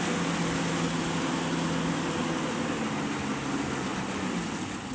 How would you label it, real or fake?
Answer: real